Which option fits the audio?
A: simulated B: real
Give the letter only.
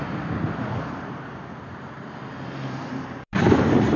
A